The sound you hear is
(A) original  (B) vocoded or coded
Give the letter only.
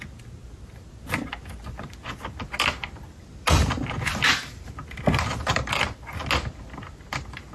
A